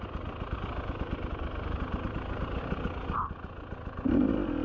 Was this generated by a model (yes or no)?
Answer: no